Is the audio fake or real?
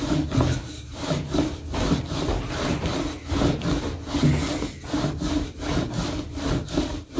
real